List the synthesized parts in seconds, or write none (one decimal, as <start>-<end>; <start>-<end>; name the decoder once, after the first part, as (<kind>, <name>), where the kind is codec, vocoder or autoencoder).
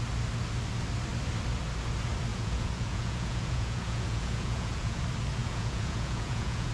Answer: 2.3-5.0 (vocoder, Vocos); 5.4-6.7